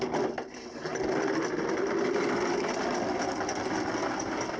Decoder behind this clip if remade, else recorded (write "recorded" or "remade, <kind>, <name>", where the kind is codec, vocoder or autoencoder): recorded